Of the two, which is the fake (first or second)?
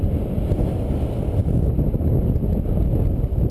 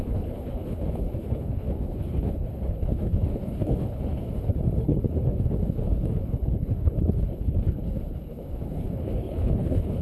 second